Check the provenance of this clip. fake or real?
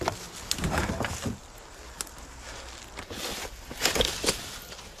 real